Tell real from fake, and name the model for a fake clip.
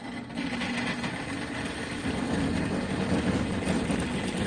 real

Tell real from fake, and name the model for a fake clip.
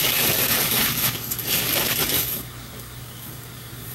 fake, codec, DAC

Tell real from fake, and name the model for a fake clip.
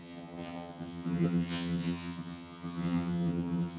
fake, vocoder, HiFi-GAN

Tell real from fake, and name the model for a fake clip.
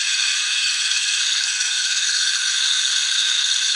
fake, codec, SNAC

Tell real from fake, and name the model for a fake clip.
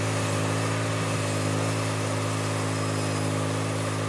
real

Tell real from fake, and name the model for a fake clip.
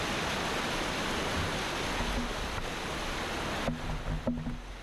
real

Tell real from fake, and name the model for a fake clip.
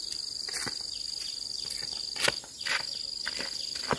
real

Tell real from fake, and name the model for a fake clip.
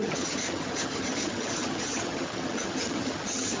fake, vocoder, HiFi-GAN